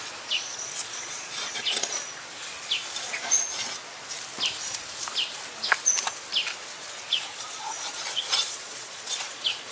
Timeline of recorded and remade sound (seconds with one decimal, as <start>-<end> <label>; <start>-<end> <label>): 0.0-2.1 remade; 2.1-3.0 recorded; 3.0-3.5 remade; 3.5-7.1 recorded; 7.1-9.7 remade